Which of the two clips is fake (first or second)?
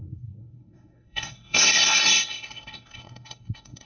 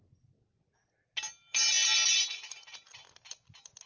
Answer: first